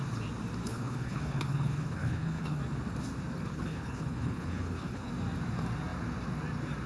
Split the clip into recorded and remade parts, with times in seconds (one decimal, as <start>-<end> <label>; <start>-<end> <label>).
0.0-0.6 recorded; 0.6-2.6 remade; 2.6-3.5 recorded; 3.5-5.1 remade; 5.1-6.9 recorded